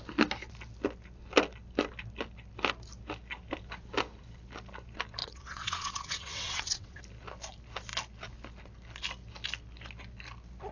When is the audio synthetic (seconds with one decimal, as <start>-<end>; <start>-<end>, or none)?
5.2-7.0

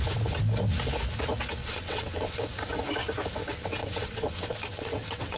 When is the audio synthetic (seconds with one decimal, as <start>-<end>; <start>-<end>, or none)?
1.6-2.5; 3.8-5.4

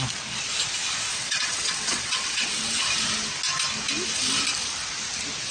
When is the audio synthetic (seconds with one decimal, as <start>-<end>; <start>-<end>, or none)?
1.1-2.8